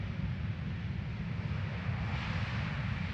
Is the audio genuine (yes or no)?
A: yes